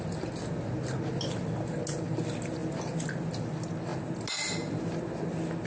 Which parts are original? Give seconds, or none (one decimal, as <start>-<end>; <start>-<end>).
0.0-5.7